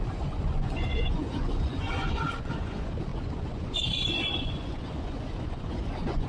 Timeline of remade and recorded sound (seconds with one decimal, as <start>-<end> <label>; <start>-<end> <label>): 0.0-6.3 remade

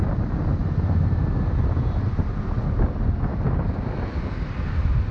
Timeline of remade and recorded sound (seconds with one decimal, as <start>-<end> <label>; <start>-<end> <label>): 0.0-5.1 recorded

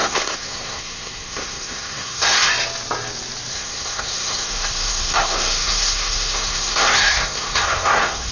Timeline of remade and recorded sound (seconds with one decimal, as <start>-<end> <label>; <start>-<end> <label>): 0.0-2.5 remade; 2.5-3.5 recorded; 3.5-8.3 remade